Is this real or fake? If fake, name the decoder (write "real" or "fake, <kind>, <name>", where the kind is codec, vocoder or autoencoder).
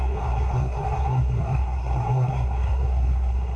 fake, codec, SNAC